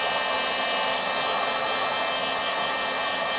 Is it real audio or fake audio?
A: real